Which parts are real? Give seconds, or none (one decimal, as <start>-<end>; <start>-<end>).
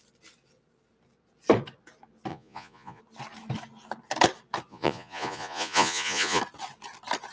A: 0.0-2.3; 3.0-4.7; 6.4-7.3